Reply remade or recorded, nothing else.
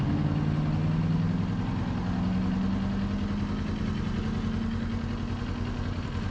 recorded